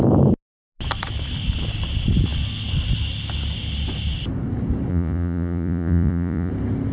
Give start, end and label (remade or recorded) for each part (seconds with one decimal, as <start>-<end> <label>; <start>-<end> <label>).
0.0-4.9 recorded; 4.9-6.5 remade; 6.5-6.9 recorded